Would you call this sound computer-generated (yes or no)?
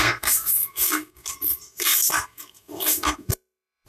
yes